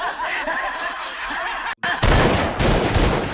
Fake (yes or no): no